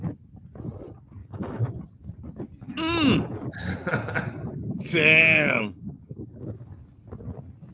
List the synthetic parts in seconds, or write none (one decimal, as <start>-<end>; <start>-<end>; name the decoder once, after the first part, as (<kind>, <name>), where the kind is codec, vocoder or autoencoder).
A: 1.2-1.8 (codec, DAC); 5.2-6.7